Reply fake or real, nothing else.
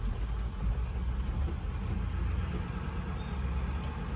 real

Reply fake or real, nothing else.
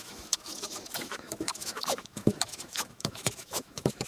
fake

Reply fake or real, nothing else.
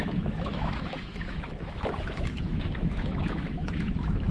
fake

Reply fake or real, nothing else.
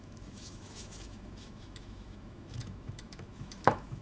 fake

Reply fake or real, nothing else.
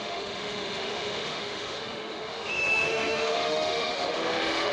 fake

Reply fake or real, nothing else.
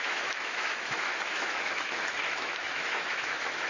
fake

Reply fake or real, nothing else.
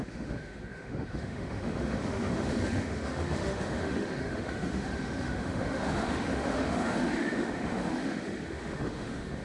fake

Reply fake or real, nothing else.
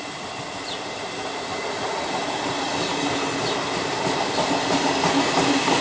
real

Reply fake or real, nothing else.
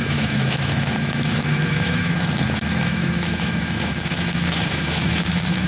fake